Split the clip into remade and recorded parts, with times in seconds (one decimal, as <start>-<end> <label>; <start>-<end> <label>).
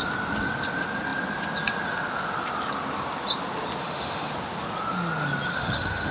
0.0-3.8 recorded; 3.8-4.3 remade; 4.3-5.5 recorded; 5.5-6.1 remade